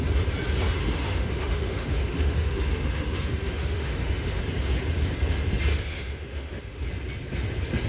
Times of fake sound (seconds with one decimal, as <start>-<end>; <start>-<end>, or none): 0.8-4.4; 5.7-6.9